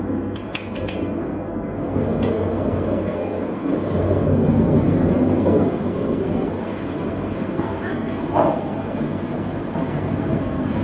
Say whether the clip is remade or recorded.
remade